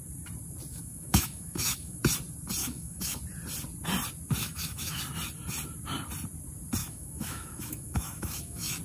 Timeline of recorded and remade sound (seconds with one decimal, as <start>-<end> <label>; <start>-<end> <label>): 0.0-0.7 recorded; 0.7-2.0 remade; 2.0-2.6 recorded; 2.6-3.2 remade; 3.2-4.4 recorded; 4.4-5.0 remade; 5.0-6.8 recorded; 6.8-8.8 remade